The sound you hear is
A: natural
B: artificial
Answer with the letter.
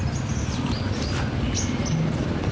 A